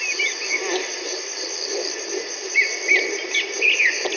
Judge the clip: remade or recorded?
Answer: recorded